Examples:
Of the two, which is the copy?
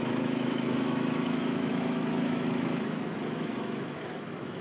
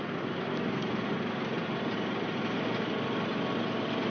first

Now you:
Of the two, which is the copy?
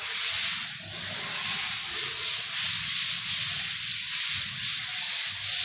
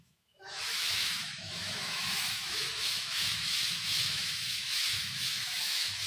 second